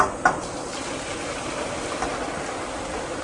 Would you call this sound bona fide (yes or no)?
yes